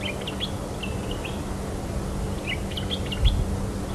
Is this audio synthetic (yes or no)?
no